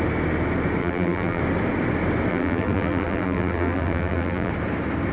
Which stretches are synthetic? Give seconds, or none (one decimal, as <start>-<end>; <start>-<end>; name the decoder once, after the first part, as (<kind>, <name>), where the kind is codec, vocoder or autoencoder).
0.8-1.4 (vocoder, BigVGAN v2); 2.3-4.5